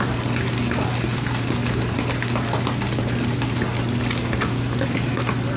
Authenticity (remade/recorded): recorded